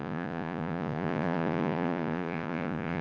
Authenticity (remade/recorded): remade